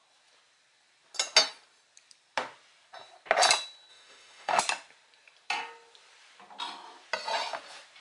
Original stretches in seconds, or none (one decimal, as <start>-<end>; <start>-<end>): 0.0-3.9; 4.6-8.0

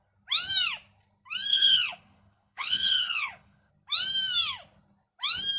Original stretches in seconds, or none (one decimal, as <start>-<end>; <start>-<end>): 0.0-1.5; 3.7-5.6

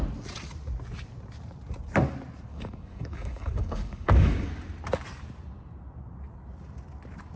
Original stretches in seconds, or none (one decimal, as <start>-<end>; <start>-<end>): 0.0-2.5; 4.5-7.4

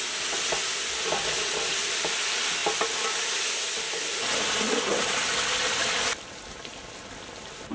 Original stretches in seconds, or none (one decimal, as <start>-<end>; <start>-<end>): 0.0-7.7